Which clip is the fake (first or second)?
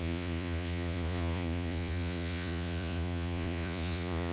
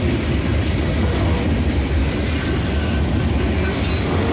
first